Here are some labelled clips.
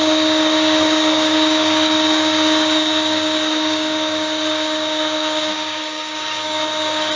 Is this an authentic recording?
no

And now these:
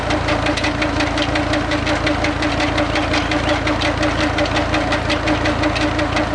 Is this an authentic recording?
yes